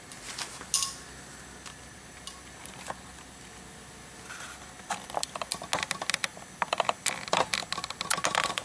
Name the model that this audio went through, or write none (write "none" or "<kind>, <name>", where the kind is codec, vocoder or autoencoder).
none